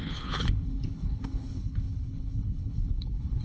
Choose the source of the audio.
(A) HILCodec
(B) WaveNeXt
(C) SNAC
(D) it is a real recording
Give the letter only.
A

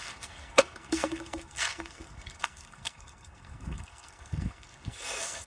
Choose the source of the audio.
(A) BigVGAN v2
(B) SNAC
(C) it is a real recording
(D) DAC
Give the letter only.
B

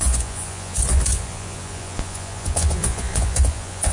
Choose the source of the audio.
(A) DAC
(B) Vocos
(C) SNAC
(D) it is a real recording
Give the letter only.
B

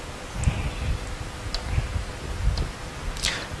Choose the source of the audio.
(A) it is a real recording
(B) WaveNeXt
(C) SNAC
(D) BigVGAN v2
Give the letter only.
A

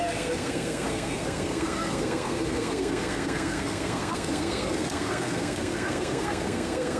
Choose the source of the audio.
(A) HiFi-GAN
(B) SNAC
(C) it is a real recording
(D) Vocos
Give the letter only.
B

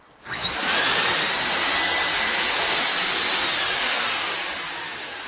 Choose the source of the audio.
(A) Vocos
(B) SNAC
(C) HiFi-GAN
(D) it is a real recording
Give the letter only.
D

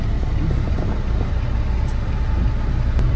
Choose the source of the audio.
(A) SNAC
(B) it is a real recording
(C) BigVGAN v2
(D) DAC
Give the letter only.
B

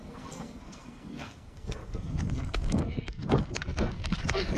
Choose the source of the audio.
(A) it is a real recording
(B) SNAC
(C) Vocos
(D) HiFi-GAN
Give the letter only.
B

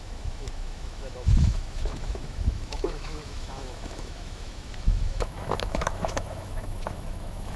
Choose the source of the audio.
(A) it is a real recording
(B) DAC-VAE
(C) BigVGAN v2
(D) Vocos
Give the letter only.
B